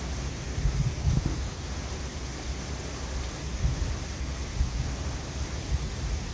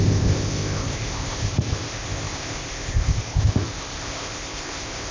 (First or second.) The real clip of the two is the first